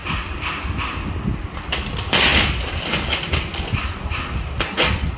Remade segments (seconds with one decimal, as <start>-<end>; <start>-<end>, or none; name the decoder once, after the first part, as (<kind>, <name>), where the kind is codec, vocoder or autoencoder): none